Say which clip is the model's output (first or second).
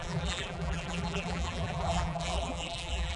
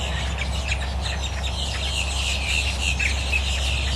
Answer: first